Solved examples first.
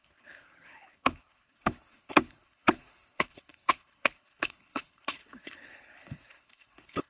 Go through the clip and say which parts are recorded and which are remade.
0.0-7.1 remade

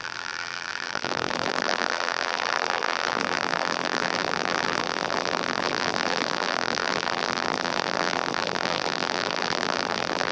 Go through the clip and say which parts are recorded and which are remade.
0.0-10.3 remade

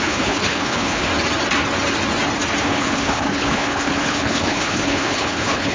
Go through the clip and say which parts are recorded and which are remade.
0.0-1.1 remade; 1.1-2.6 recorded; 2.6-5.7 remade

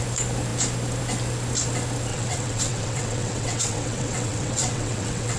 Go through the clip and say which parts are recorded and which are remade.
0.0-2.1 recorded; 2.1-5.4 remade

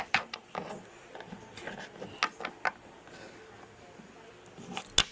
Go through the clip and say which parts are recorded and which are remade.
0.0-5.1 recorded

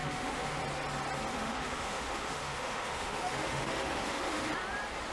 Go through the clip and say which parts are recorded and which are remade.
0.0-0.6 remade; 0.6-1.3 recorded; 1.3-4.4 remade; 4.4-5.1 recorded